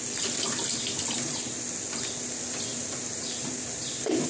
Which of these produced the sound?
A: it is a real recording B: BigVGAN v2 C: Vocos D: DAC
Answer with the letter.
A